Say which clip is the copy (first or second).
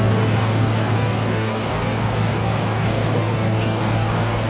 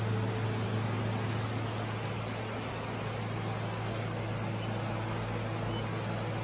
first